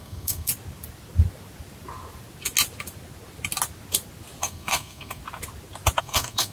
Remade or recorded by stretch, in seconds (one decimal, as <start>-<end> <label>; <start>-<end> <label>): 0.0-0.5 remade; 0.5-4.4 recorded; 4.4-5.2 remade; 5.2-6.0 recorded; 6.0-6.5 remade